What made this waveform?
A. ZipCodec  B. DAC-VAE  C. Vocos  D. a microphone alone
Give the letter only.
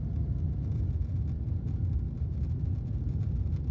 D